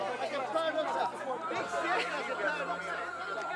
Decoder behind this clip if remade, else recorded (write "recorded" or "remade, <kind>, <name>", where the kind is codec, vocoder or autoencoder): recorded